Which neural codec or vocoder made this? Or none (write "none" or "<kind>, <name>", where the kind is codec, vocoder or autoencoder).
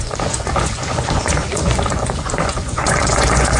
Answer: vocoder, Vocos